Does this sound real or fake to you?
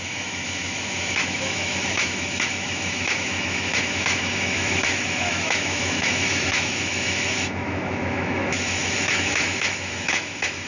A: fake